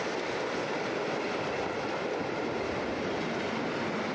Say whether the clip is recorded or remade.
recorded